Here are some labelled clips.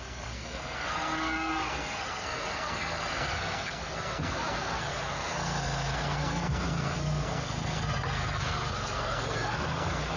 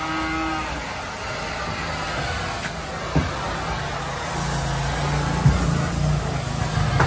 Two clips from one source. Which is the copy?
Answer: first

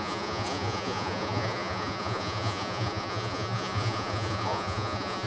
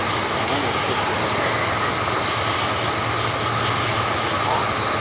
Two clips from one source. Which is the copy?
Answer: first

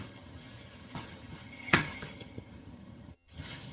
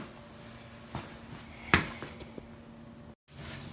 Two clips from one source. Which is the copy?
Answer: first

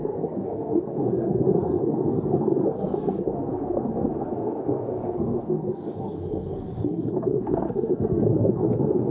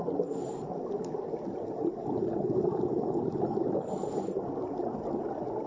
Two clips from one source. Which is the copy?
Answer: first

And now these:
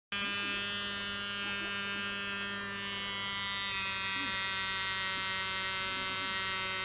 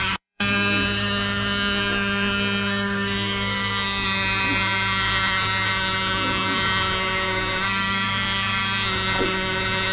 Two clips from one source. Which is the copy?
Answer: second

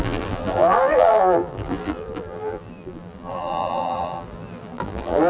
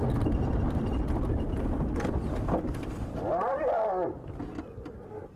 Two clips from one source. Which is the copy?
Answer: first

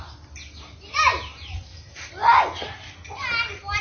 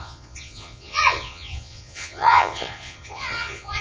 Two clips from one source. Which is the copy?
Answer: second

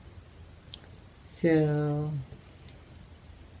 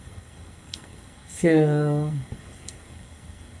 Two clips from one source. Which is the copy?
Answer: second